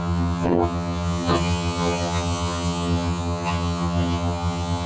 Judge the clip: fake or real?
fake